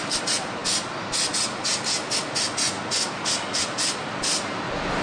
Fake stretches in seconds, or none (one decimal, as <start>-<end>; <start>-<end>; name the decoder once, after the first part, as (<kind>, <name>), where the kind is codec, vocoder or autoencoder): none